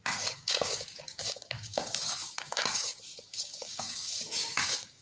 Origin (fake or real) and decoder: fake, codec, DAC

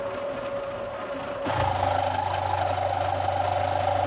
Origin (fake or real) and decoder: real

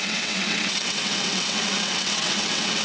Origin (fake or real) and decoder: fake, vocoder, WaveNeXt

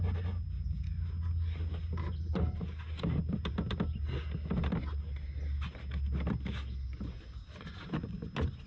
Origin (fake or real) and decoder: real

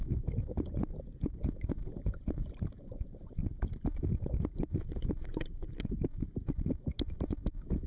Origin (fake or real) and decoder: real